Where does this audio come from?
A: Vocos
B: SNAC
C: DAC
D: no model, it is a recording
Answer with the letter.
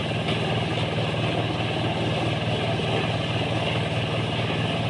D